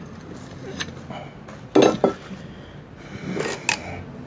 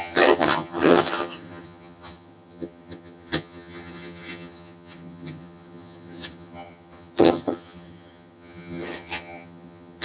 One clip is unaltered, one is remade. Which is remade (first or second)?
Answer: second